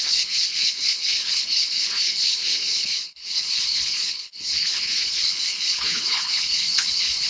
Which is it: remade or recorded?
remade